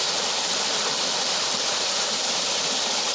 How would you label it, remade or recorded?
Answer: recorded